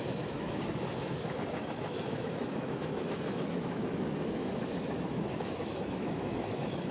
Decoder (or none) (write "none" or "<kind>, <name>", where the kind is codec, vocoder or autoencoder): autoencoder, DAC-VAE